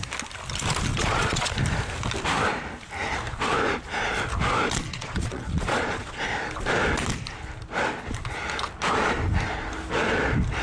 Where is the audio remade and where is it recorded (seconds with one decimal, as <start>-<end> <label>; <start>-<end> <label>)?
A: 0.0-0.9 recorded; 0.9-1.5 remade; 1.5-4.9 recorded; 4.9-6.2 remade; 6.2-10.6 recorded